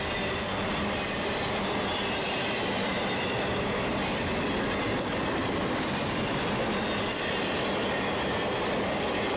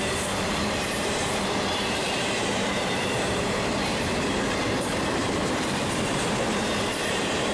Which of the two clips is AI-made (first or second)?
second